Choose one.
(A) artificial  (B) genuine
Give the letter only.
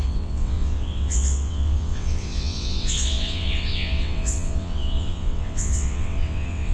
A